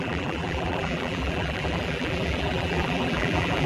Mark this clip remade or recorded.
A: remade